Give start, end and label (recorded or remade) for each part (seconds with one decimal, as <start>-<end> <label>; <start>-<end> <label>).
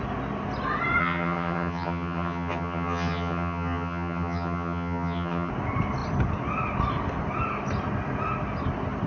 0.0-1.0 recorded; 1.0-5.5 remade; 5.5-9.1 recorded